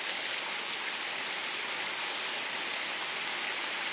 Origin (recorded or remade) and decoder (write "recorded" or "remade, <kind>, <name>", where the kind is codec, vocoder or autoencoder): recorded